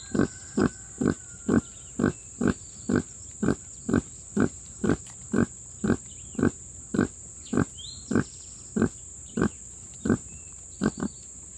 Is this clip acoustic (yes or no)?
yes